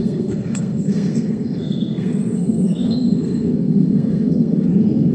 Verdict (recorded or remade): remade